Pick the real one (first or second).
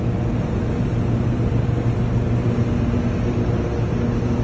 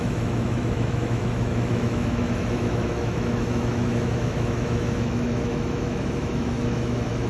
first